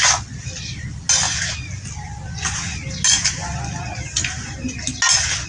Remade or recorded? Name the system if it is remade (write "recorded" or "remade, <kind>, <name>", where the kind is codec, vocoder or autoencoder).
recorded